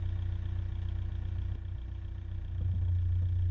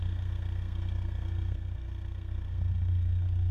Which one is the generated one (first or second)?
second